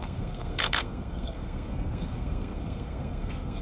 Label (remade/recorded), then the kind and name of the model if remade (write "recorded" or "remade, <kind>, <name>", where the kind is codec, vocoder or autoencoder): remade, codec, SNAC